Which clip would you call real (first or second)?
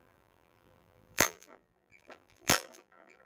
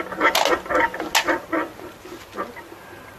second